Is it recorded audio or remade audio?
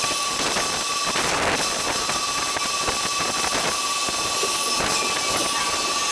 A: recorded